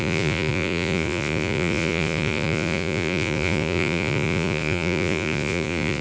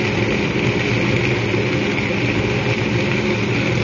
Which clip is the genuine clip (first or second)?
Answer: second